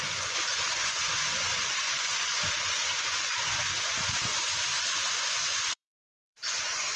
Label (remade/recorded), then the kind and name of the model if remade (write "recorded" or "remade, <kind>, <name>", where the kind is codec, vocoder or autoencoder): remade, vocoder, Vocos